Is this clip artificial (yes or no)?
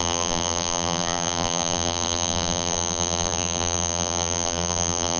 yes